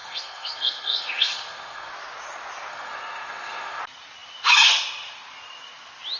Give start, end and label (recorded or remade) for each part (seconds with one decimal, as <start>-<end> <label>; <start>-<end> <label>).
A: 0.0-1.9 remade; 1.9-2.7 recorded; 2.7-3.8 remade; 3.8-6.2 recorded